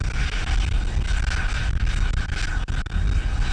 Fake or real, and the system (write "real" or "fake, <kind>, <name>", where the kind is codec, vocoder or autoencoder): real